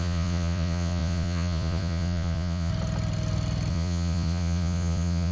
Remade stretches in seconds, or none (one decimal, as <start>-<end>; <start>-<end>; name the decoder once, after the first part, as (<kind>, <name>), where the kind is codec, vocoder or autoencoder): 0.0-2.7 (vocoder, Vocos); 3.7-5.3